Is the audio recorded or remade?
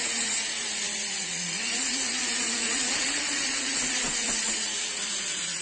remade